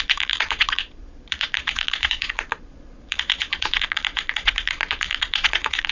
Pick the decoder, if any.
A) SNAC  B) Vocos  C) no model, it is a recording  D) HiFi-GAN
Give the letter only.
B